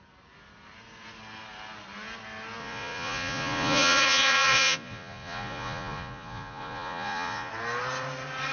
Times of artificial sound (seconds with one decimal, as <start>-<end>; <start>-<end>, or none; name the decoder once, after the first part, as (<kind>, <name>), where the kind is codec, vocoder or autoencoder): 2.6-7.5 (vocoder, Vocos)